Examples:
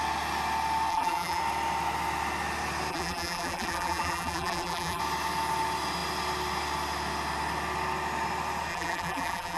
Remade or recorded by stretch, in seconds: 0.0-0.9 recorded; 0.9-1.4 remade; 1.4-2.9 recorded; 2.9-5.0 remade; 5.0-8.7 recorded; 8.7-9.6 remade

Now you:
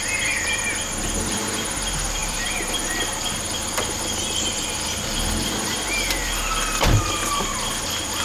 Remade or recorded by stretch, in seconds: 0.0-2.2 recorded; 2.2-3.4 remade; 3.4-8.2 recorded